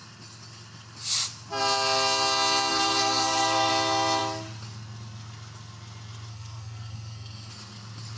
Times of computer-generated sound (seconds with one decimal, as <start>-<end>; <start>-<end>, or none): 2.7-3.7; 6.3-7.5